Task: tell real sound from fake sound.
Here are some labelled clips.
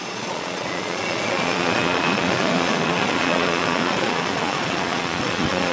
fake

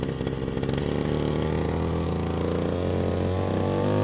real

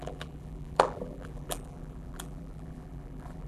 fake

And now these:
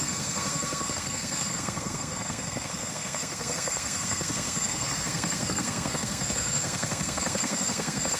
fake